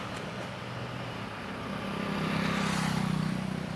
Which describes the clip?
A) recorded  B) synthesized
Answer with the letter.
A